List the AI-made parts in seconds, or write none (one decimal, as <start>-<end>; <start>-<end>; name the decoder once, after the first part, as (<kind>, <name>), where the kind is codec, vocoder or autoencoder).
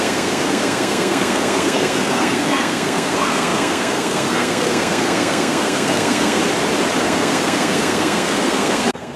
0.0-6.4 (codec, SNAC); 7.0-9.2